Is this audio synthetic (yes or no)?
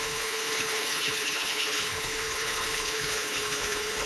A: yes